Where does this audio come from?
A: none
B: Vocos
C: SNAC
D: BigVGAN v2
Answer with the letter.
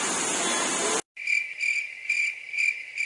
A